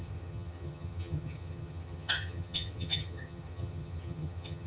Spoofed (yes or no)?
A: yes